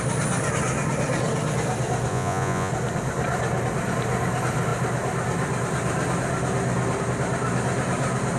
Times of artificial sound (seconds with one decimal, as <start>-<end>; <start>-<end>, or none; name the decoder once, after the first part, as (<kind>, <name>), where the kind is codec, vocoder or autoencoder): 2.1-2.7 (vocoder, Vocos)